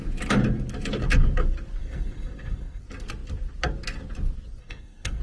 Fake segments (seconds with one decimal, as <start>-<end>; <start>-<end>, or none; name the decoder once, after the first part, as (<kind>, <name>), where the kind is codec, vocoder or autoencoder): 1.8-2.8 (codec, SNAC); 4.6-5.2